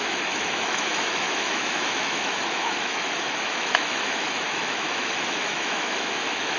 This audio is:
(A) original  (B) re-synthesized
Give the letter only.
B